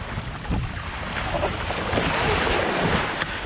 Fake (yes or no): no